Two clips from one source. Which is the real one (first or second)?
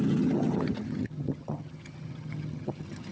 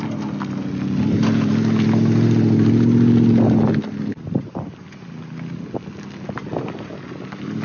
second